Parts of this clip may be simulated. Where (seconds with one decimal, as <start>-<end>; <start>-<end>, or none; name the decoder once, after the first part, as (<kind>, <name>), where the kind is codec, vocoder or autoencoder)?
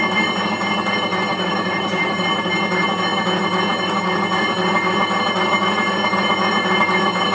1.3-2.1 (vocoder, BigVGAN v2)